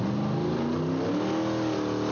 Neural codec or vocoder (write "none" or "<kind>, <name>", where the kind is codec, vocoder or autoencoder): none